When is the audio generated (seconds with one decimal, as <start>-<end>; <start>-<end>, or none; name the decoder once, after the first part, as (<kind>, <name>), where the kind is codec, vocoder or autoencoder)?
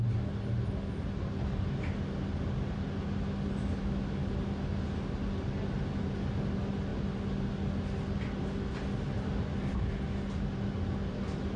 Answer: none